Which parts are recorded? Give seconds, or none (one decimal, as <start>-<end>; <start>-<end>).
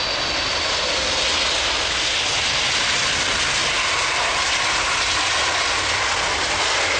0.0-3.6; 4.6-7.0